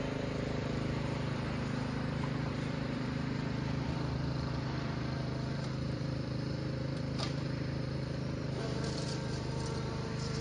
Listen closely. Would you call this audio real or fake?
fake